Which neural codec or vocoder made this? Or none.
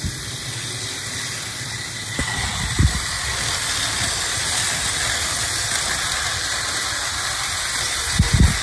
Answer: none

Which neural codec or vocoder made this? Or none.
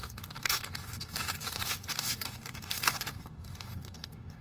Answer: codec, DAC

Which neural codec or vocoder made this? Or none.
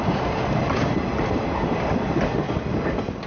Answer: none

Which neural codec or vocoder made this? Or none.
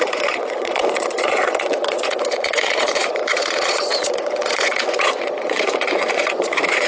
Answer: vocoder, Vocos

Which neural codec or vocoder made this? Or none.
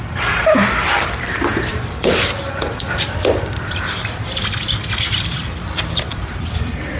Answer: vocoder, BigVGAN v2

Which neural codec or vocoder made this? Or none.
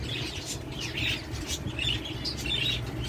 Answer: none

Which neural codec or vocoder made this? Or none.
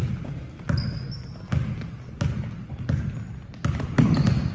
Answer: none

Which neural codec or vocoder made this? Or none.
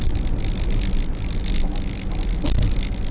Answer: none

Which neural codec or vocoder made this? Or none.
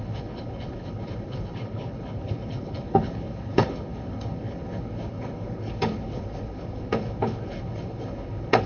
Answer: codec, HILCodec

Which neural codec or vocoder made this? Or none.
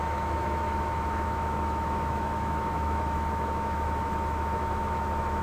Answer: autoencoder, DAC-VAE